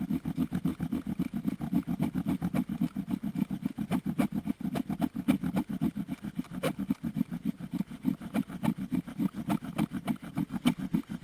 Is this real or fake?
real